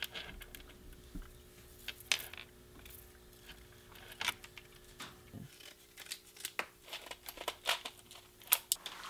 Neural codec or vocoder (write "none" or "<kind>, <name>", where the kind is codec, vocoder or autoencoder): none